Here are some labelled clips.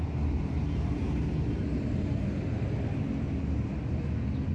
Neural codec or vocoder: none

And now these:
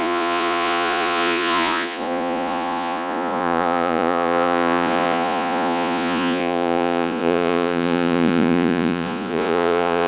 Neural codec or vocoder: vocoder, Vocos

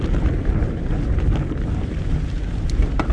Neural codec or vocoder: none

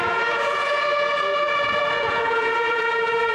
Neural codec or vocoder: vocoder, Vocos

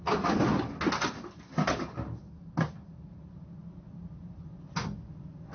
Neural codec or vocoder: none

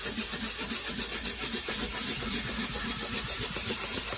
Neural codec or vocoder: none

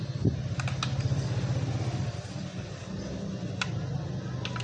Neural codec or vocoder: none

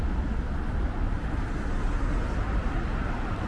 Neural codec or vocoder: none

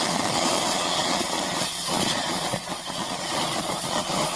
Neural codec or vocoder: vocoder, Vocos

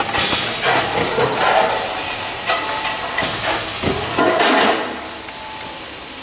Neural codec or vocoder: none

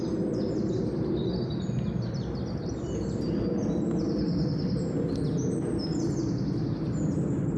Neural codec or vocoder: none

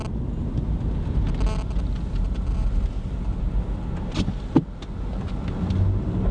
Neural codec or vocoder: none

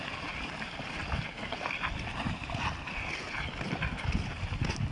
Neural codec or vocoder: none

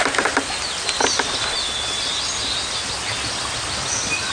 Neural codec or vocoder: none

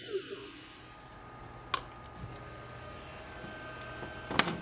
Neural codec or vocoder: none